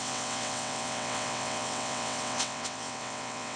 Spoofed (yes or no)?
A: yes